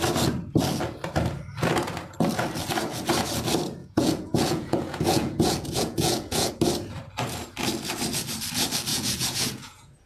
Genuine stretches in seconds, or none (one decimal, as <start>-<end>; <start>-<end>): 0.0-3.8; 6.5-8.9